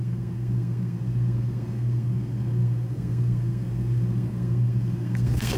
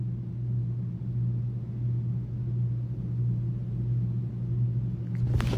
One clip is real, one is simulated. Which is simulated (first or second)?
first